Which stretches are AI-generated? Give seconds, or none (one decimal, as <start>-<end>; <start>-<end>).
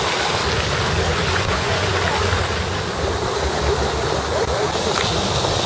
1.2-1.9